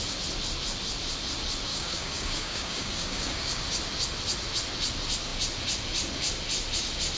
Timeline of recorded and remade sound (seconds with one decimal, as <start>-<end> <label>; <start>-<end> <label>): 0.0-1.7 recorded; 1.7-3.6 remade; 3.6-7.2 recorded